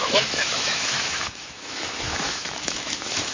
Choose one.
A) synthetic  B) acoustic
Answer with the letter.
A